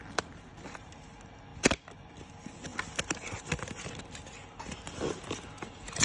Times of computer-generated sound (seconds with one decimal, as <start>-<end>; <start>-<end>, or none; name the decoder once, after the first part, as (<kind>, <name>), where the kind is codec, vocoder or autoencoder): none